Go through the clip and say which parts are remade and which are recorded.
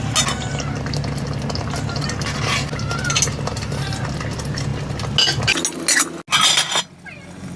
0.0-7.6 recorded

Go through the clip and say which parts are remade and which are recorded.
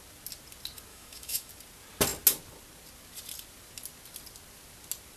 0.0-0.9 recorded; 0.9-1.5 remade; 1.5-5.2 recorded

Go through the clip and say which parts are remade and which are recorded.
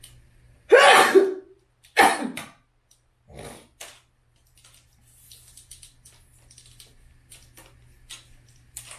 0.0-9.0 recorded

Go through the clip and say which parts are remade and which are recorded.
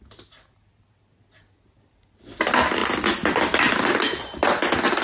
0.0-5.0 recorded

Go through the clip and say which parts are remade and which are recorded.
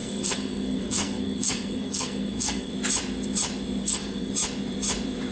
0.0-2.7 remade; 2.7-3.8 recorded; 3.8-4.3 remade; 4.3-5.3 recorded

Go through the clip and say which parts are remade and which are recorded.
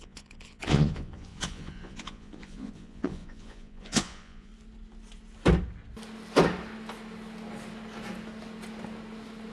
0.0-4.5 remade; 4.5-9.5 recorded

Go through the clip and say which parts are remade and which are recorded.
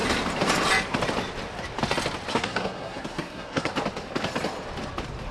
0.0-2.3 recorded; 2.3-3.7 remade; 3.7-5.3 recorded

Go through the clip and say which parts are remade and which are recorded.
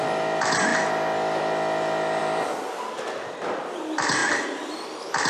0.0-2.2 recorded; 2.2-3.6 remade; 3.6-4.2 recorded; 4.2-5.3 remade